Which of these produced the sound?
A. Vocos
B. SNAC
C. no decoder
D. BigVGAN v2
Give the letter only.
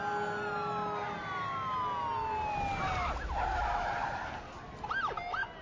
C